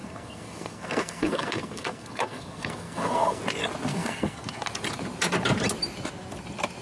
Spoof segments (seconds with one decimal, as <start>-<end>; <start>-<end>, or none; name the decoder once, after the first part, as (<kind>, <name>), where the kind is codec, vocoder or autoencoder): 0.0-3.4 (codec, SNAC); 3.9-4.5